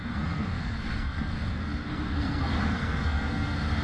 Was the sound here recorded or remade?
remade